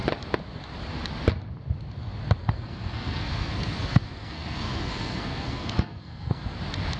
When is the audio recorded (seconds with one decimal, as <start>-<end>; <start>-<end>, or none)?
0.0-2.4; 6.6-7.0